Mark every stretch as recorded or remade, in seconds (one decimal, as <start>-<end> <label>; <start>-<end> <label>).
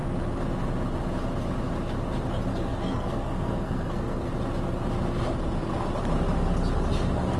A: 0.0-2.5 recorded; 2.5-4.3 remade; 4.3-7.4 recorded